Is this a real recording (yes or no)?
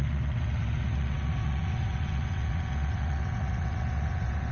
no